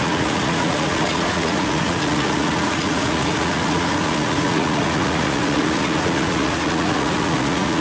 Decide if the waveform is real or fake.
fake